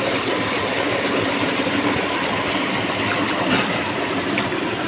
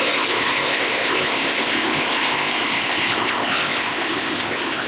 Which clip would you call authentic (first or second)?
first